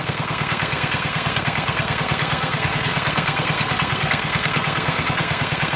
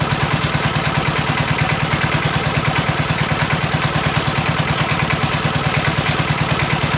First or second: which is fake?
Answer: first